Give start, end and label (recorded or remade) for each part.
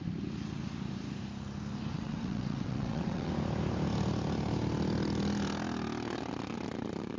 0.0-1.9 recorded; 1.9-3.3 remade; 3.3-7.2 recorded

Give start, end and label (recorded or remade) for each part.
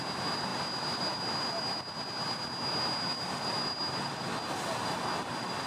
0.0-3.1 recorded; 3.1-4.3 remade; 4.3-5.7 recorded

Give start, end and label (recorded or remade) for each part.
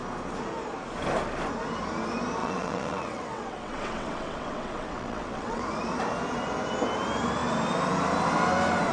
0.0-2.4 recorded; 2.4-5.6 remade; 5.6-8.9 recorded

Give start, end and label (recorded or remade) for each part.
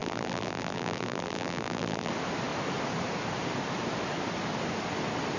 0.0-2.1 remade; 2.1-5.4 recorded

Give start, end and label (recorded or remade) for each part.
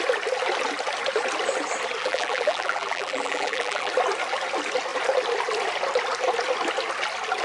0.0-2.0 recorded; 2.0-3.9 remade; 3.9-7.4 recorded